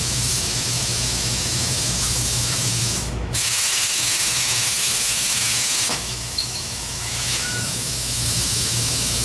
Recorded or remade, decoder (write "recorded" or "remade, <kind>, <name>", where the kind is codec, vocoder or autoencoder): remade, autoencoder, DAC-VAE